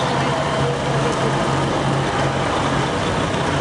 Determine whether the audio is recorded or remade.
recorded